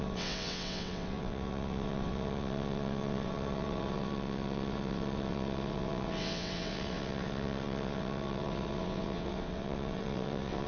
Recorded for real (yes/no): no